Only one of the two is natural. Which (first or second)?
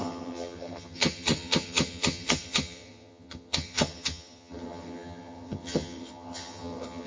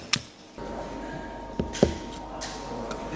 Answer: second